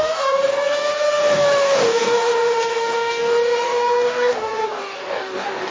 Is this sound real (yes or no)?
no